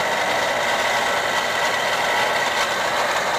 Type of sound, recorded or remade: recorded